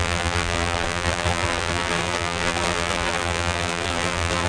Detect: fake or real fake